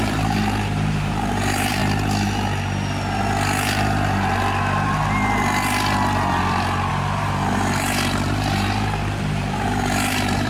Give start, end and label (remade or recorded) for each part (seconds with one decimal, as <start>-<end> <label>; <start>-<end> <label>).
0.0-1.8 remade; 1.8-6.9 recorded; 6.9-10.5 remade